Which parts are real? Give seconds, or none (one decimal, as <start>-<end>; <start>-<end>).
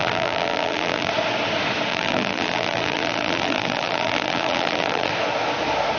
1.1-1.9; 5.1-6.0